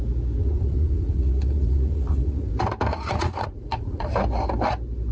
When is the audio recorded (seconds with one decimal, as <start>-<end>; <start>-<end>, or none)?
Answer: 0.0-0.4; 2.5-2.9; 4.1-5.1